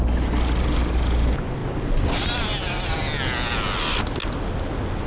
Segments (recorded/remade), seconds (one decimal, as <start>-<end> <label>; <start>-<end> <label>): 0.0-5.1 recorded